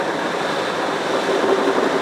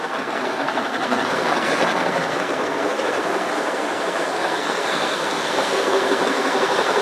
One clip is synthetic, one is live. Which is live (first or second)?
first